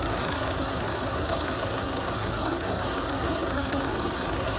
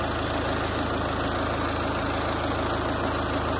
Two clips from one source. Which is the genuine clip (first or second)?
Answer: second